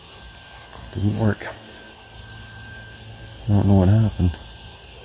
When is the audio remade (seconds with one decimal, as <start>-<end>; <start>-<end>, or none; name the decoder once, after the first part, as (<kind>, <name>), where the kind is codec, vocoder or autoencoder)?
none